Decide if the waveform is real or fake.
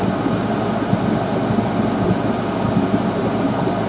real